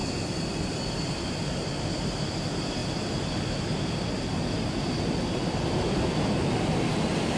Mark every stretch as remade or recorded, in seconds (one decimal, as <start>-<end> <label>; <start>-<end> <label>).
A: 0.0-7.4 recorded